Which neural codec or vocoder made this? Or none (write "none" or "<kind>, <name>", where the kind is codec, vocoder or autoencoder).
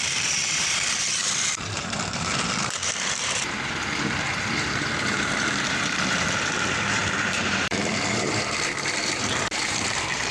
vocoder, BigVGAN v2